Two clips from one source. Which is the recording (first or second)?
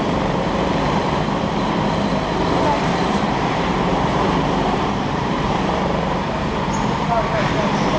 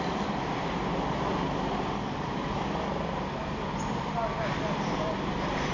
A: second